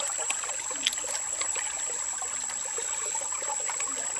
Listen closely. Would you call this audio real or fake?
real